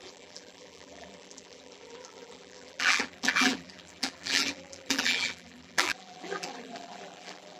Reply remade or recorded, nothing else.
remade